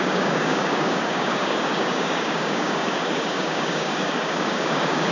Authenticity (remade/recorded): remade